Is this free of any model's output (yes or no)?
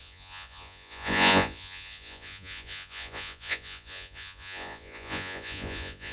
no